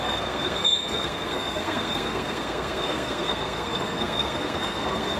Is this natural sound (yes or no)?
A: no